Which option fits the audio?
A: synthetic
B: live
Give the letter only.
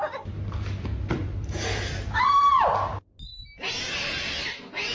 B